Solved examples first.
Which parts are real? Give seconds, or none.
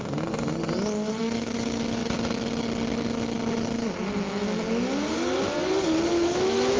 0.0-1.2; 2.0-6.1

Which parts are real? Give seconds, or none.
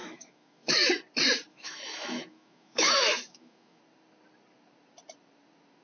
1.0-1.5; 3.8-5.8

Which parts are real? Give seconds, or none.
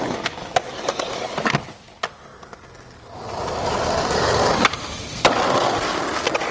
0.0-6.5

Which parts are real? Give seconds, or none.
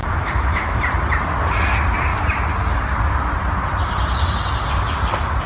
0.8-5.5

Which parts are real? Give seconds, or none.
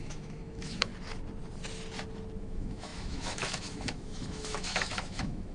0.9-2.4